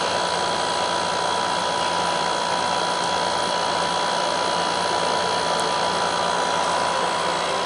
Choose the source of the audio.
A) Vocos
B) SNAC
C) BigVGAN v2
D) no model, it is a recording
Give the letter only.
D